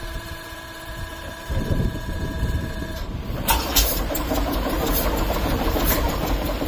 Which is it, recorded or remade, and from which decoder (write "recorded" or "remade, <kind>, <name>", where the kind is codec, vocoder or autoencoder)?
remade, vocoder, BigVGAN v2